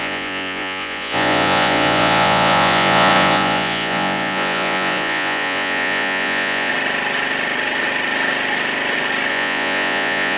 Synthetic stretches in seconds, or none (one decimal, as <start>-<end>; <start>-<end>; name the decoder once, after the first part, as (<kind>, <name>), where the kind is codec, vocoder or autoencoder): 0.0-6.7 (vocoder, Vocos); 9.3-10.4